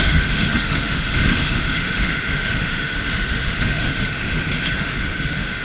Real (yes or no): no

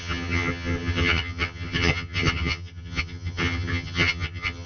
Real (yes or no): no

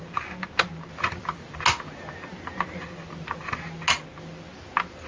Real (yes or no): yes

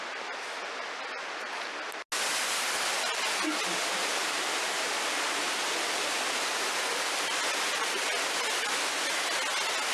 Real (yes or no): yes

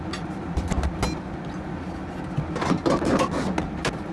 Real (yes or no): yes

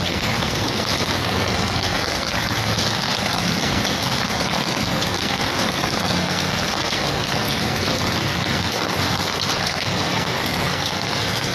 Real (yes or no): no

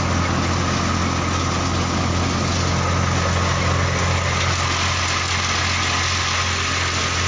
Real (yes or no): yes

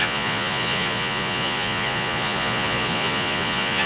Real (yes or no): no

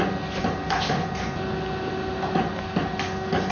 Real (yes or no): yes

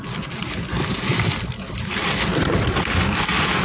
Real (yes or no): yes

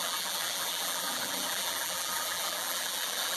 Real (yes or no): no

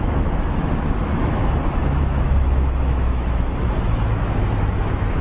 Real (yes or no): no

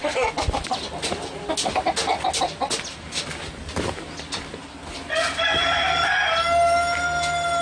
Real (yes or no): yes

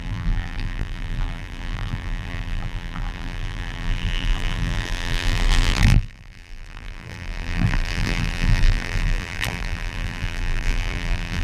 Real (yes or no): no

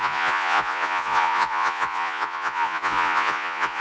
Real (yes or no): no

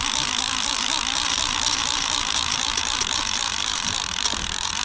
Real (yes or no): yes